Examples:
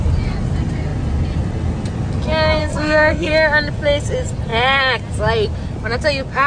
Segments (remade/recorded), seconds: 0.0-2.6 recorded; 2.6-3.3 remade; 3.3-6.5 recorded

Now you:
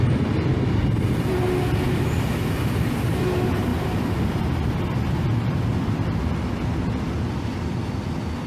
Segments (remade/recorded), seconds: 0.0-8.5 recorded

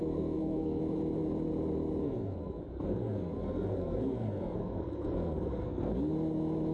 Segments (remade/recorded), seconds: 0.0-0.8 remade; 0.8-2.0 recorded; 2.0-5.9 remade; 5.9-6.7 recorded

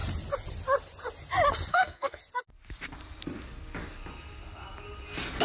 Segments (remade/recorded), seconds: 0.0-1.7 recorded; 1.7-2.2 remade; 2.2-5.4 recorded

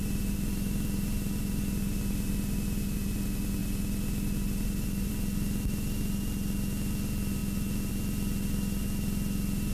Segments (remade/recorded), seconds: 0.0-9.7 recorded

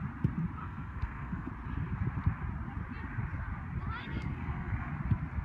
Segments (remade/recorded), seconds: 0.0-0.6 recorded; 0.6-1.5 remade; 1.5-4.0 recorded; 4.0-4.9 remade; 4.9-5.4 recorded